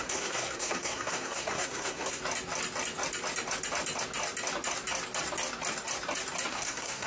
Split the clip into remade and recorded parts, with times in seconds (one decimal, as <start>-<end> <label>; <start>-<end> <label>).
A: 0.0-2.2 remade; 2.2-6.5 recorded; 6.5-7.1 remade